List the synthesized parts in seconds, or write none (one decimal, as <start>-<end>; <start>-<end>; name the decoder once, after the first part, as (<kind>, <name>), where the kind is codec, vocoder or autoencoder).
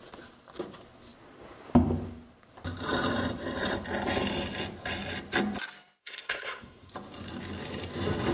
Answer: 6.0-6.9 (codec, SNAC)